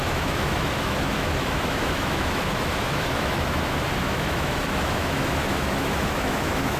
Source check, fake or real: fake